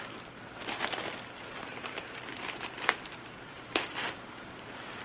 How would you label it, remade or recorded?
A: recorded